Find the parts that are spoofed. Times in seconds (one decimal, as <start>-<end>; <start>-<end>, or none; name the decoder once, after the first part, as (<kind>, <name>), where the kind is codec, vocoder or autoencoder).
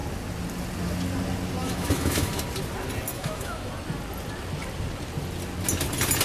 1.6-2.4 (autoencoder, DAC-VAE); 3.1-3.7